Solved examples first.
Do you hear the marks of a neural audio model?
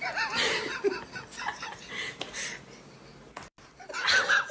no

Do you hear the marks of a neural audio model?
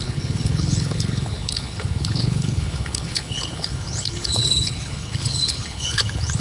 yes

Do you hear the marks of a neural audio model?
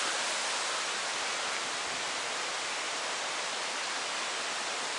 no